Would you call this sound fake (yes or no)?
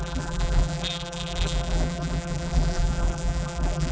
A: yes